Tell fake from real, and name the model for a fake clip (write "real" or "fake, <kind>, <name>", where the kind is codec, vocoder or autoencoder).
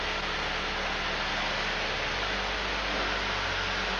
real